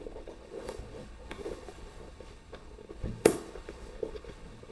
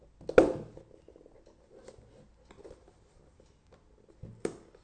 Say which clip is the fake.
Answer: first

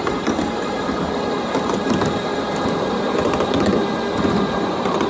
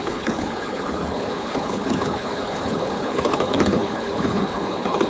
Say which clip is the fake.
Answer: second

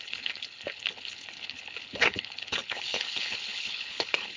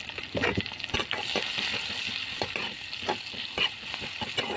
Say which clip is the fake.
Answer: first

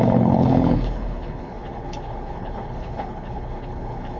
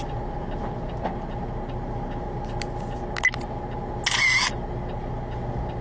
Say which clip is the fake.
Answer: first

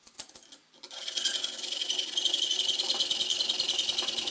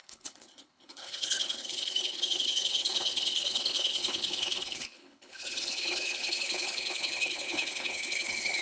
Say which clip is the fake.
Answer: second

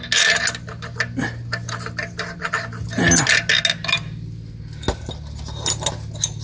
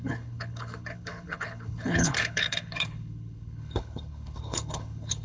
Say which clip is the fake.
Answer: second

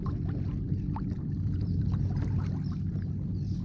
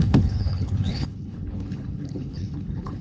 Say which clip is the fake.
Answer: second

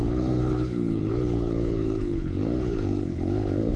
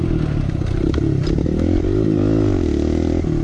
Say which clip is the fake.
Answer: first